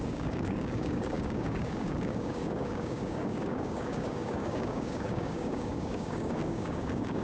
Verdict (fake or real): fake